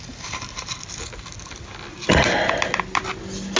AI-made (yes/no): no